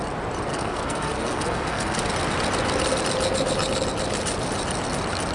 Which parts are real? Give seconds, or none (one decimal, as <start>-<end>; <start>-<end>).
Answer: 0.0-0.5; 2.0-5.3